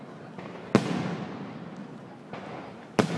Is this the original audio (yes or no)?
yes